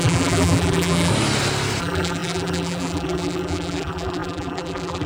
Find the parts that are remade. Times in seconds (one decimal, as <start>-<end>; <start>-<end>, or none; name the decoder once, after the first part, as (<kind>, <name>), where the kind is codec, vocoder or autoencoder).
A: 0.0-1.1 (vocoder, BigVGAN v2); 1.8-5.1

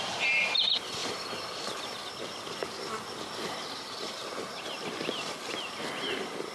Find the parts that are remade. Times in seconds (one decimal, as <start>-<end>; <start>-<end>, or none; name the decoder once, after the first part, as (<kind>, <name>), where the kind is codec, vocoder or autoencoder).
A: 0.0-6.5 (vocoder, BigVGAN v2)

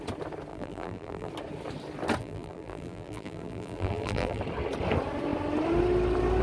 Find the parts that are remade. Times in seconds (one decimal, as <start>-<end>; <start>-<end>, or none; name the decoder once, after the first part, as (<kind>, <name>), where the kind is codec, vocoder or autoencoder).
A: 0.5-1.3 (vocoder, BigVGAN v2); 2.2-4.4

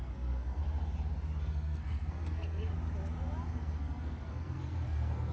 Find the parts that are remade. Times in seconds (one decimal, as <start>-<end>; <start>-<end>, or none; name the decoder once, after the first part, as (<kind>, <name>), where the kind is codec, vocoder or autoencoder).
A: 0.0-0.6 (codec, SNAC); 1.4-2.7; 3.5-5.3

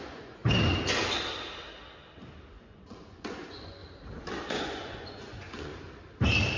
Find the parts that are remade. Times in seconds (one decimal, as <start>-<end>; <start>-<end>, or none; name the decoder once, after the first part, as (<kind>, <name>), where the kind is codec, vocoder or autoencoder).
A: 0.0-0.4 (vocoder, Vocos); 2.5-3.8; 4.5-5.7

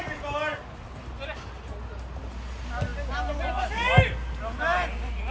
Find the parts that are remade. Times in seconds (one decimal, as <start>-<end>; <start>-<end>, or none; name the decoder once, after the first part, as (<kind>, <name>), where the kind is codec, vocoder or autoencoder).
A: none